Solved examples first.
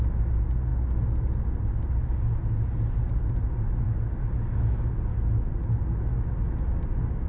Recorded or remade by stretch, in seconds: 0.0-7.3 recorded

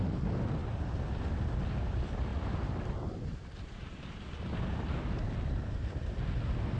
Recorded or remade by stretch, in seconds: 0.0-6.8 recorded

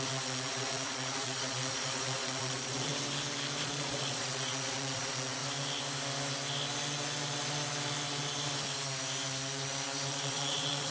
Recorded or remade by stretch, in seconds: 0.0-2.9 remade; 2.9-3.6 recorded; 3.6-5.4 remade; 5.4-10.1 recorded; 10.1-10.9 remade

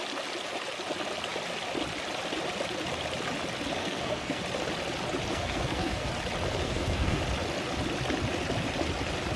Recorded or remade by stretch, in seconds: 0.0-3.8 recorded; 3.8-4.4 remade; 4.4-5.3 recorded; 5.3-6.1 remade; 6.1-6.6 recorded; 6.6-7.2 remade; 7.2-9.4 recorded

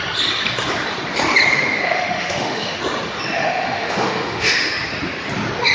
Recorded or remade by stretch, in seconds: 0.0-1.5 recorded; 1.5-2.8 remade; 2.8-3.4 recorded; 3.4-4.7 remade; 4.7-5.7 recorded

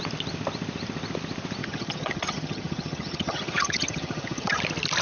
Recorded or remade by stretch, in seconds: 0.0-1.6 recorded; 1.6-4.6 remade; 4.6-5.0 recorded